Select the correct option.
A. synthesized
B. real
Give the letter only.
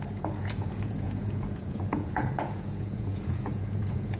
A